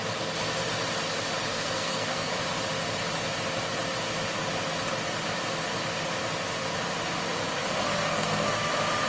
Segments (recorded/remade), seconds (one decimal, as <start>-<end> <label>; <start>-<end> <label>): 0.0-1.5 recorded; 1.5-2.3 remade; 2.3-8.1 recorded; 8.1-8.7 remade; 8.7-9.1 recorded